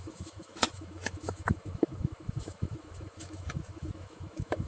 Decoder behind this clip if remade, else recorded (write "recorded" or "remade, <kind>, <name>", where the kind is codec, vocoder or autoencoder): remade, autoencoder, DAC-VAE